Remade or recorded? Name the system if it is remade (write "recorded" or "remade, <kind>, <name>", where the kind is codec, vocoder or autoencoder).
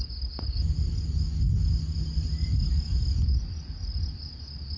recorded